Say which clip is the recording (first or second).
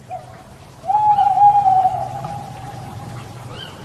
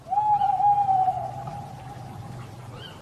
second